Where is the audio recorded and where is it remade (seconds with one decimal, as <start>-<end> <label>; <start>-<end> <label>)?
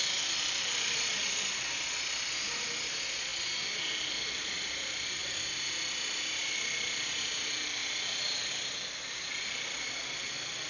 0.0-10.7 recorded